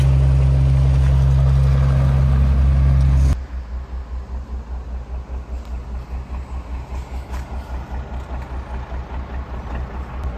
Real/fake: real